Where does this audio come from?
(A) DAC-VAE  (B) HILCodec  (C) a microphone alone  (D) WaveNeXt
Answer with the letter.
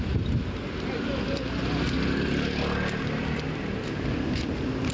C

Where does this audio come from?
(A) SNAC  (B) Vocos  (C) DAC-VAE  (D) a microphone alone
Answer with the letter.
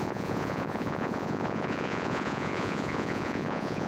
B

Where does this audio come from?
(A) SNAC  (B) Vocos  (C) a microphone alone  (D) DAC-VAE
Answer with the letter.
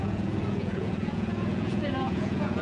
B